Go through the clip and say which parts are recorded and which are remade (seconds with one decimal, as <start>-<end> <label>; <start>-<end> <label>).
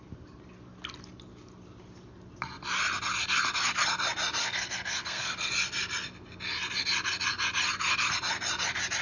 0.0-4.4 recorded; 4.4-5.5 remade; 5.5-9.0 recorded